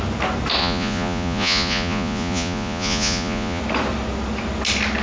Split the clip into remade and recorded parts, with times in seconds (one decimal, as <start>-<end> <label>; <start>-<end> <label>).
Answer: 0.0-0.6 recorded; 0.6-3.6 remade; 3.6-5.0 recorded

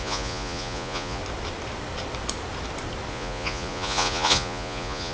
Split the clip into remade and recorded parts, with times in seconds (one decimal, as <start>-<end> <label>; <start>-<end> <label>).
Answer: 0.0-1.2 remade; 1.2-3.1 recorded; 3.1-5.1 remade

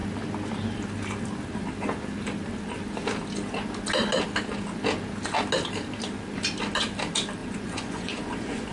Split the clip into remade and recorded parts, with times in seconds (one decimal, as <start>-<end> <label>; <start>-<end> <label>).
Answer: 0.0-7.4 recorded; 7.4-8.7 remade

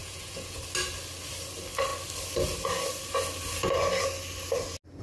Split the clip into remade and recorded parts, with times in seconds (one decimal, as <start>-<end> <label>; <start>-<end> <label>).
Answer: 0.0-0.6 remade; 0.6-5.0 recorded